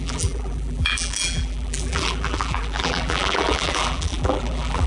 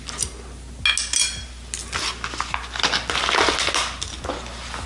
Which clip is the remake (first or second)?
first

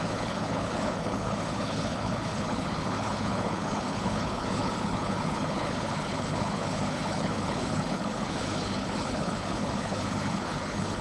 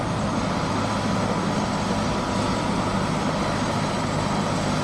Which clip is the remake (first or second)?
first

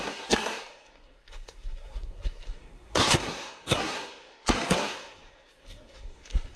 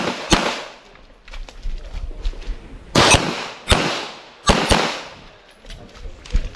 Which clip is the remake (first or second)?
first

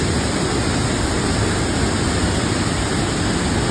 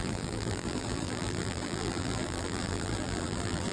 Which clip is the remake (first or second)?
second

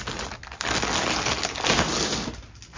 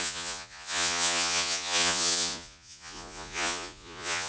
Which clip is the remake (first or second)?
second